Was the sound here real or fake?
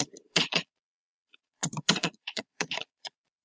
fake